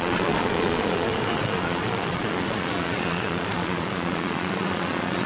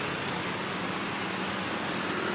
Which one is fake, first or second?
first